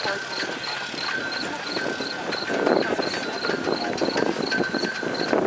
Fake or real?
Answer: real